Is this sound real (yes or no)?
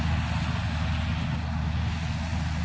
yes